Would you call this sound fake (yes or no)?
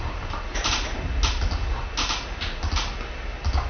no